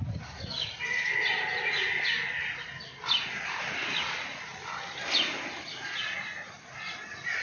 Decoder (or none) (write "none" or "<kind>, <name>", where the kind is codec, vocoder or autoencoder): none